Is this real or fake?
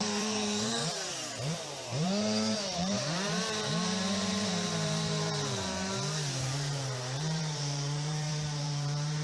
fake